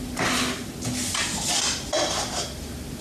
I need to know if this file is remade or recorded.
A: recorded